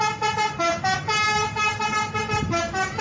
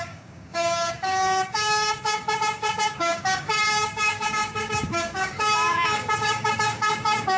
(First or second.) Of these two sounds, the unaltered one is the first